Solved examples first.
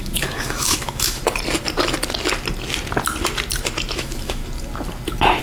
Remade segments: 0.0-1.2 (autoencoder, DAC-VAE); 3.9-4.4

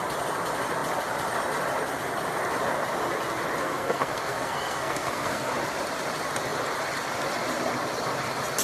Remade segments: 3.6-5.5 (codec, SNAC)

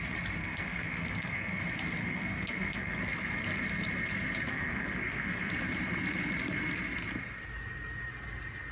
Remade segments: 0.4-1.6 (codec, SNAC); 2.0-3.0; 4.5-5.5

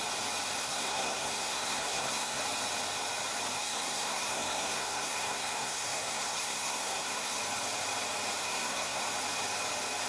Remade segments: 0.6-2.4 (codec, SNAC); 3.6-7.4; 8.4-9.0